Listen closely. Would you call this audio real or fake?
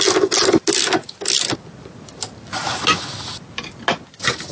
real